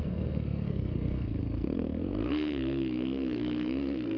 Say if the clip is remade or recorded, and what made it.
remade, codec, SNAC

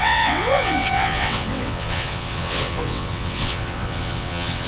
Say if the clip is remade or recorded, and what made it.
remade, vocoder, WaveNeXt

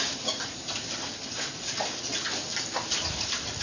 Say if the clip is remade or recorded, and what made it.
recorded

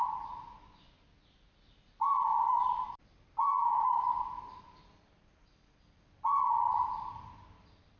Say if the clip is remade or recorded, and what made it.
recorded